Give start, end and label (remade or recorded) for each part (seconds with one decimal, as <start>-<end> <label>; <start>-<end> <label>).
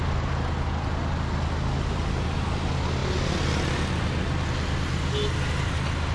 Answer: 0.0-6.1 recorded